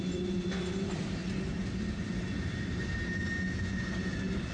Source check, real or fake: real